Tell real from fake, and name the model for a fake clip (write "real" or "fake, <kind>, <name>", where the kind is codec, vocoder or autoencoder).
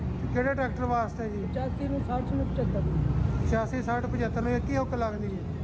real